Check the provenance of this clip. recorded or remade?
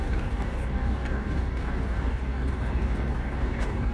remade